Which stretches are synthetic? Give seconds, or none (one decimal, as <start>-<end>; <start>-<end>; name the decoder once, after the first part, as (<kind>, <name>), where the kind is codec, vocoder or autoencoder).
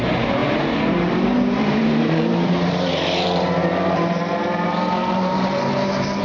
0.0-6.2 (vocoder, BigVGAN v2)